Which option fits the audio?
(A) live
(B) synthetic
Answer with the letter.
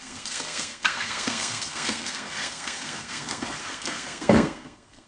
B